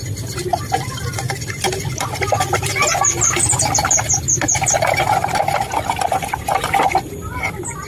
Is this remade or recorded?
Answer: recorded